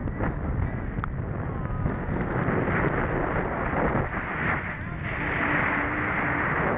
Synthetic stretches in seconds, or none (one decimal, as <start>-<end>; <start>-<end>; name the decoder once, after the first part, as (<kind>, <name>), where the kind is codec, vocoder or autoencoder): none